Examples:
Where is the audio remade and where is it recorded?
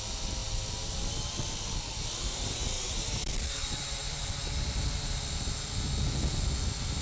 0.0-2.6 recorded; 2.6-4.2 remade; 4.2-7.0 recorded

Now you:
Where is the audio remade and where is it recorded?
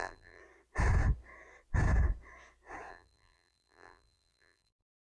0.0-0.4 remade; 0.4-2.9 recorded; 2.9-5.0 remade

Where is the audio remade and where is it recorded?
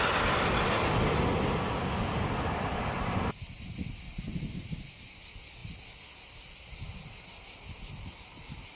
0.0-8.8 recorded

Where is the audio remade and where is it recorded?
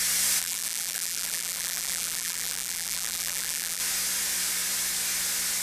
0.0-0.4 recorded; 0.4-3.8 remade; 3.8-5.6 recorded